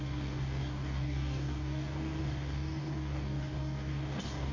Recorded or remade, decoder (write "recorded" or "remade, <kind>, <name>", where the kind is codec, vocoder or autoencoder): remade, codec, DAC